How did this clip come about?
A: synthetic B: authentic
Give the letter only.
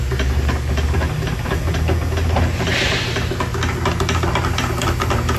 B